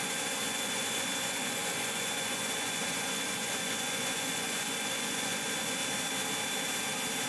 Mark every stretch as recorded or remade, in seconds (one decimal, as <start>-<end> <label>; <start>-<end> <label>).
0.0-5.8 remade; 5.8-7.3 recorded